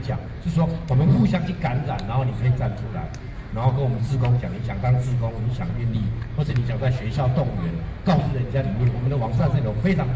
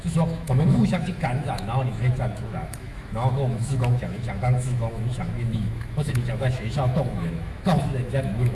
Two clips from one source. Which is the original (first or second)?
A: first